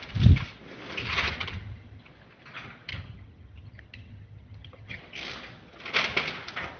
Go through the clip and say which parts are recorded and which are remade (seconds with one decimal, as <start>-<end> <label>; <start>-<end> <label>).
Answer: 0.0-1.0 recorded; 1.0-2.0 remade; 2.0-2.9 recorded; 2.9-5.0 remade; 5.0-6.8 recorded